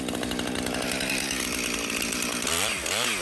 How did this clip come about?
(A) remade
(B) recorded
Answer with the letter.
B